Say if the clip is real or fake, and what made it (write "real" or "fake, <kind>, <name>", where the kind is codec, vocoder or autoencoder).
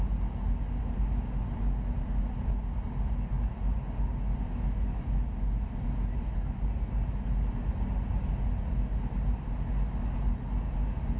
real